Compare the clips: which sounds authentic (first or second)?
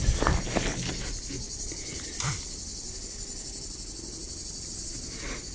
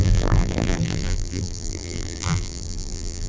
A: first